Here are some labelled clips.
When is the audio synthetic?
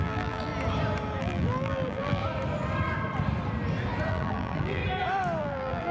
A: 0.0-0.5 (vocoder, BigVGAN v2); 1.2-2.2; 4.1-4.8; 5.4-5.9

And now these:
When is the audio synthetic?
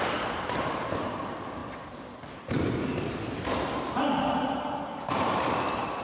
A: 0.0-1.6 (vocoder, BigVGAN v2); 2.3-6.0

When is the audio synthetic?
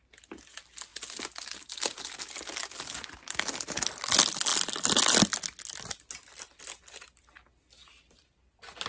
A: 7.8-8.9 (vocoder, BigVGAN v2)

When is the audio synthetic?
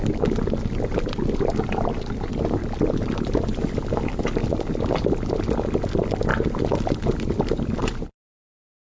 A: 7.8-8.5 (vocoder, BigVGAN v2)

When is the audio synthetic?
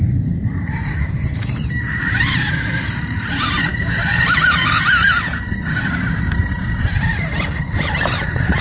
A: 0.0-8.6 (vocoder, BigVGAN v2)